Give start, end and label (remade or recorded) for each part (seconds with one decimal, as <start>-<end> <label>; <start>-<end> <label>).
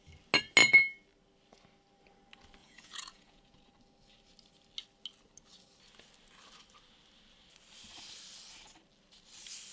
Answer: 0.0-2.6 recorded; 2.6-3.7 remade; 3.7-9.7 recorded